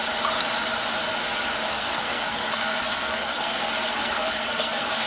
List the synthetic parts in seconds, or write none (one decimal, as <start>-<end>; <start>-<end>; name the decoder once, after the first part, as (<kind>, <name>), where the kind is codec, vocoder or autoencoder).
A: 1.7-5.1 (codec, SNAC)